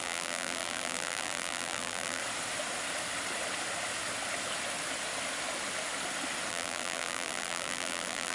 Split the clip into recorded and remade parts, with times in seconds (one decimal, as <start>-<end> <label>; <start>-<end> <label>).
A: 0.0-2.2 remade; 2.2-6.5 recorded; 6.5-8.3 remade